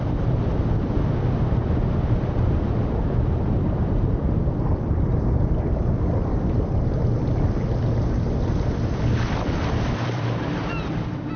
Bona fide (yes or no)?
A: no